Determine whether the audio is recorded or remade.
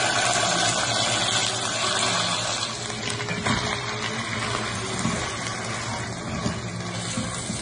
recorded